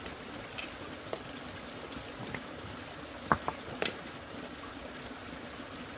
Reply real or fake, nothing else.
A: real